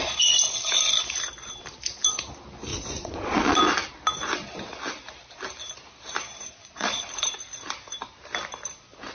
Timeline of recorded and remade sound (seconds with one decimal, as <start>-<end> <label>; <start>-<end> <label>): 0.0-2.7 recorded; 2.7-3.6 remade; 3.6-6.6 recorded; 6.6-7.2 remade; 7.2-9.1 recorded